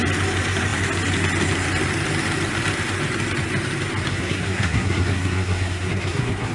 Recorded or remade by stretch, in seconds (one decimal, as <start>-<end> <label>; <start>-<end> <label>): 0.0-4.1 recorded; 4.1-6.5 remade